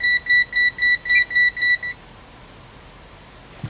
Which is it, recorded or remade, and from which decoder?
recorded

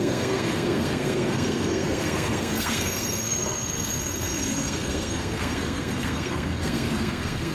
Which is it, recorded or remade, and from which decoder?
remade, codec, SNAC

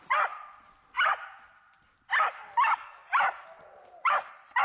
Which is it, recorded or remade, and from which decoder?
recorded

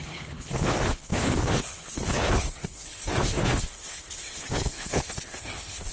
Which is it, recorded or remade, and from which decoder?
remade, codec, HILCodec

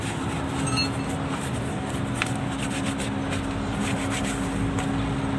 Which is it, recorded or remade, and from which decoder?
recorded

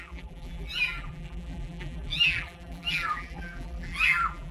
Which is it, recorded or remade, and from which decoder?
remade, vocoder, BigVGAN v2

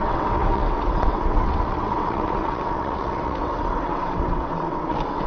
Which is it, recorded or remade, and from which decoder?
remade, vocoder, WaveNeXt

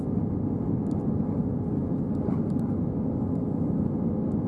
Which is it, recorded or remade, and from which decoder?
recorded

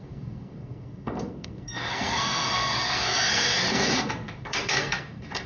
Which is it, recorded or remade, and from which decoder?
remade, codec, SNAC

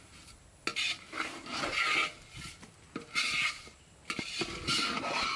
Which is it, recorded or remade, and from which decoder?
recorded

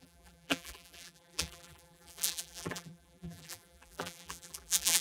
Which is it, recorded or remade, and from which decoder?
remade, vocoder, BigVGAN v2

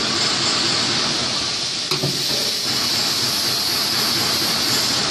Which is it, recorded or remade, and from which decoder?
recorded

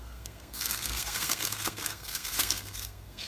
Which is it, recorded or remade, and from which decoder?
remade, codec, SNAC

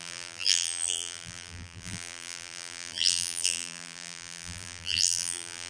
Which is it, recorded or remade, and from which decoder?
remade, vocoder, BigVGAN v2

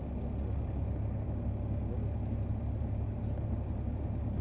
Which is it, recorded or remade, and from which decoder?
recorded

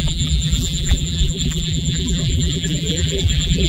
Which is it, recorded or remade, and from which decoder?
remade, vocoder, BigVGAN v2